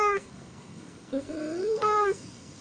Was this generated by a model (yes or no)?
yes